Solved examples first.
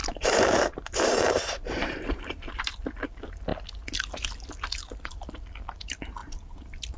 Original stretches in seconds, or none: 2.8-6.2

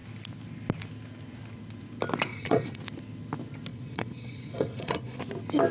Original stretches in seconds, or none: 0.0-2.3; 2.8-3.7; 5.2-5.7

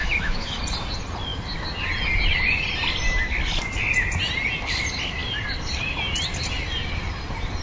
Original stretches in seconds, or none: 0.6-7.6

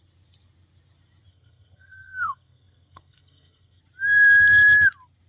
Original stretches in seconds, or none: 0.0-1.3; 3.8-5.3

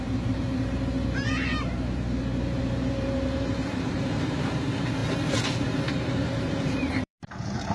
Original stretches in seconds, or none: 5.0-5.6

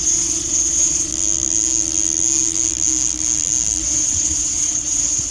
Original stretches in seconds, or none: 1.1-3.8

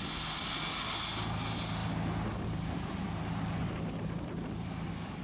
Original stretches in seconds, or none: 0.0-5.2

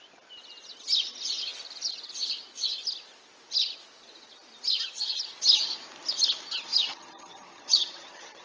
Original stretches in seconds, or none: 0.0-6.7